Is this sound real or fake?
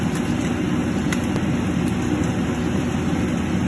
real